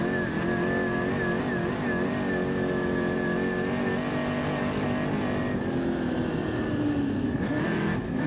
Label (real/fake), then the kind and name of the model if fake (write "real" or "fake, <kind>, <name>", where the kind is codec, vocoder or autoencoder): real